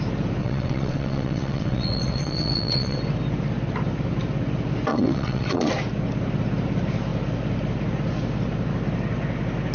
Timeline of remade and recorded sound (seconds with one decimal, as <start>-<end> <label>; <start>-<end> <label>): 0.0-0.4 recorded; 0.4-3.0 remade; 3.0-4.9 recorded; 4.9-5.7 remade; 5.7-9.7 recorded